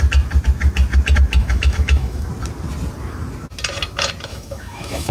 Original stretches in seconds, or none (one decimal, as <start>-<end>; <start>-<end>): 0.0-1.4; 2.3-4.3